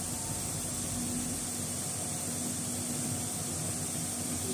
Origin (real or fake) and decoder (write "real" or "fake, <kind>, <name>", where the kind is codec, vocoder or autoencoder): real